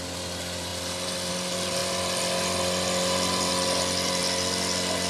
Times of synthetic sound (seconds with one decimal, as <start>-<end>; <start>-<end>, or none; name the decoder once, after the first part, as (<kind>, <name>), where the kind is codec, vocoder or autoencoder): none